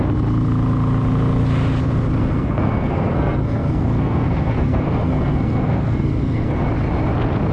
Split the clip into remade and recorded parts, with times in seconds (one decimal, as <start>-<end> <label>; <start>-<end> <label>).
0.0-2.2 recorded; 2.2-6.7 remade; 6.7-7.5 recorded